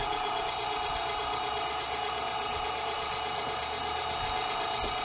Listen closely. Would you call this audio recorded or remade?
recorded